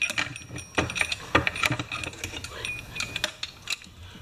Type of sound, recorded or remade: recorded